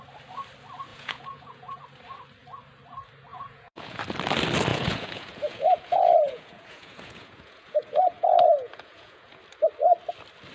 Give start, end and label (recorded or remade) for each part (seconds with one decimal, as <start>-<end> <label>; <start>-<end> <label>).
0.0-0.9 recorded; 0.9-1.8 remade; 1.8-3.3 recorded; 3.3-4.0 remade; 4.0-4.7 recorded; 4.7-9.4 remade; 9.4-10.5 recorded